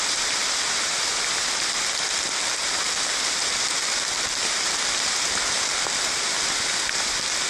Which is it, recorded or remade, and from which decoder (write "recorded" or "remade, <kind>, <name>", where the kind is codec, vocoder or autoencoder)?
recorded